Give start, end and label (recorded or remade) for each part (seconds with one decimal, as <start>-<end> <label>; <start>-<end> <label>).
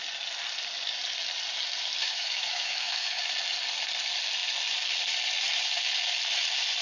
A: 0.0-2.0 recorded; 2.0-3.2 remade; 3.2-6.8 recorded